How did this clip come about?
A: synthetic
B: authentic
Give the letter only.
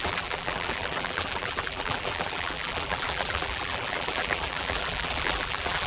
A